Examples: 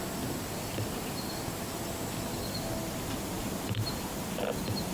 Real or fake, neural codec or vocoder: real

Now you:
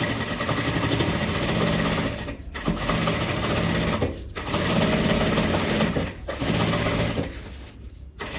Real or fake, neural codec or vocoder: real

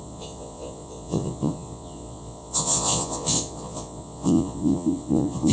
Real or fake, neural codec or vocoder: fake, vocoder, Vocos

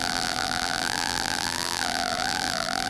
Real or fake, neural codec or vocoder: fake, vocoder, BigVGAN v2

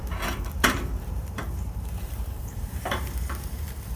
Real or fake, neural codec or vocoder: fake, vocoder, BigVGAN v2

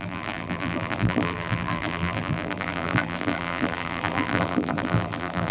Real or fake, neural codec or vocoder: fake, vocoder, BigVGAN v2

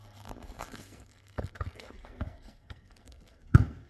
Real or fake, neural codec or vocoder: fake, codec, SNAC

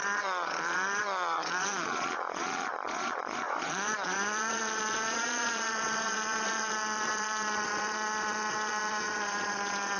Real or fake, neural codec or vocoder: fake, vocoder, Vocos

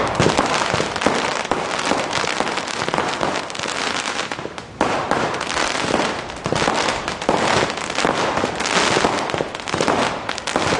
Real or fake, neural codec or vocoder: real